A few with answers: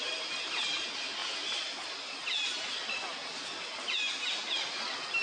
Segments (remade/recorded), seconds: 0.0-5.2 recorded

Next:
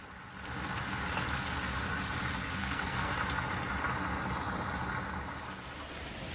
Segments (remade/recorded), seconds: 0.0-2.6 recorded; 2.6-3.1 remade; 3.1-6.3 recorded

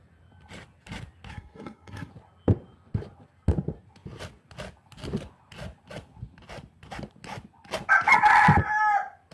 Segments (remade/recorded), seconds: 0.0-1.3 recorded; 1.3-2.1 remade; 2.1-9.3 recorded

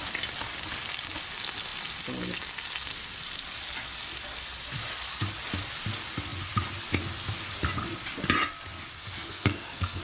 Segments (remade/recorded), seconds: 0.0-9.0 recorded; 9.0-10.0 remade